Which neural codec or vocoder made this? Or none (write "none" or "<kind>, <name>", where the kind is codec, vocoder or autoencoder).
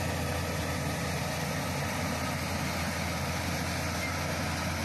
none